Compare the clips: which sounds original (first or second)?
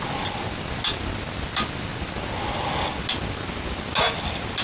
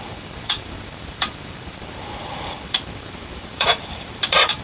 first